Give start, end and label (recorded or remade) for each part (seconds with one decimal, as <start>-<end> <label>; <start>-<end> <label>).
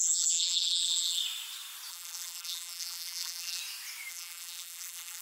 0.0-1.2 remade; 1.2-1.9 recorded; 1.9-3.6 remade; 3.6-4.1 recorded; 4.1-5.2 remade